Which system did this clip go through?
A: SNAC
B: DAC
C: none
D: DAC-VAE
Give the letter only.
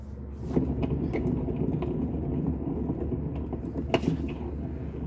C